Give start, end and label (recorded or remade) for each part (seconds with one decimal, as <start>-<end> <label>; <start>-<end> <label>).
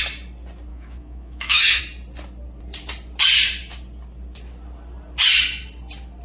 0.0-0.7 recorded; 0.7-1.8 remade; 1.8-6.2 recorded